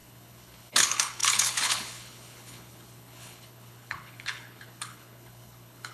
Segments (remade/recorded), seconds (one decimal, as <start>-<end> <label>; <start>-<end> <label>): 0.0-5.9 remade